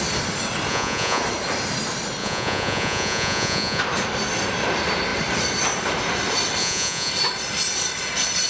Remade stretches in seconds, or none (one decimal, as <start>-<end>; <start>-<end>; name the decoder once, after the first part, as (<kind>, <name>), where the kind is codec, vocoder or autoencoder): 0.7-1.2 (vocoder, Vocos); 2.2-3.8; 6.6-7.1

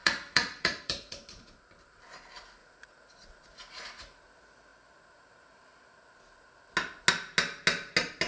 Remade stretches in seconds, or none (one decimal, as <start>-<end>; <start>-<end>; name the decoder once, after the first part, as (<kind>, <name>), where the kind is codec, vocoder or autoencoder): 0.0-1.6 (vocoder, Vocos); 2.6-4.2